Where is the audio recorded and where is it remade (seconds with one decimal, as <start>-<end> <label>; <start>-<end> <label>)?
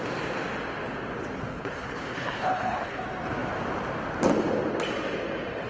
0.0-1.5 recorded; 1.5-3.0 remade; 3.0-5.7 recorded